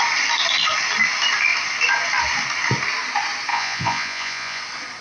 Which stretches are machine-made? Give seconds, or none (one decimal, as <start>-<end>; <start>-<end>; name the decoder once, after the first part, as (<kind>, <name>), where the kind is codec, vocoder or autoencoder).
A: 3.5-4.6 (vocoder, Vocos)